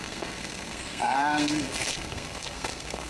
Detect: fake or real fake